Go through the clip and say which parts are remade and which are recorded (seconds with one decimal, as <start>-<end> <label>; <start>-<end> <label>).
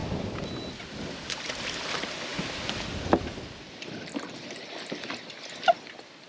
0.0-6.3 recorded